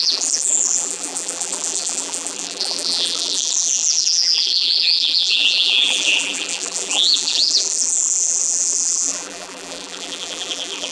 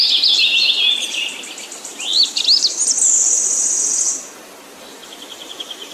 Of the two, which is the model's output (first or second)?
first